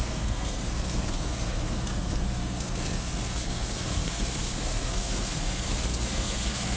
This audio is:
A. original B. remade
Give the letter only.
B